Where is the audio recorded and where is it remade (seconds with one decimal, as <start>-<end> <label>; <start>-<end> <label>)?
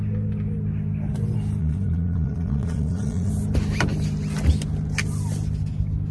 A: 0.0-1.6 recorded; 1.6-3.3 remade; 3.3-6.1 recorded